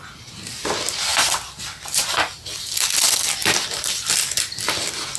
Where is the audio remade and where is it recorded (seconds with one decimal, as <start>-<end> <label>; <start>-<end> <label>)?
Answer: 0.0-1.1 recorded; 1.1-4.1 remade; 4.1-5.2 recorded